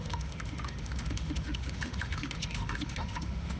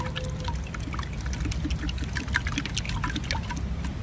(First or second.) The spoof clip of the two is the first